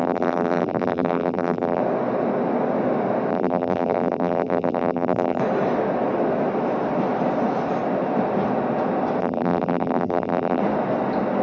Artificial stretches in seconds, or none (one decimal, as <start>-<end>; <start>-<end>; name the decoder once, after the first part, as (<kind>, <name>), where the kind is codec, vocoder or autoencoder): 0.0-1.8 (vocoder, BigVGAN v2); 3.3-5.4; 9.2-10.6